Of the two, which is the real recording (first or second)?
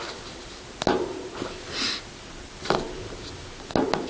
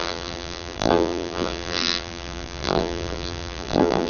first